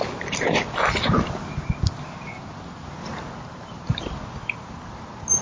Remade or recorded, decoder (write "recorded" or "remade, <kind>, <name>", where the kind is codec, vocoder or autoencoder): recorded